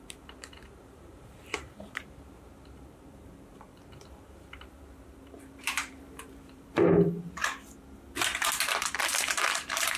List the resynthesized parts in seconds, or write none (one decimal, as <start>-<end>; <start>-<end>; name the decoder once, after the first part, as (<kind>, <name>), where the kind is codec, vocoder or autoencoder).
0.0-7.4 (vocoder, BigVGAN v2); 8.6-10.0